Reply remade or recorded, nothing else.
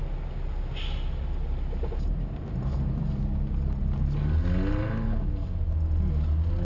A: recorded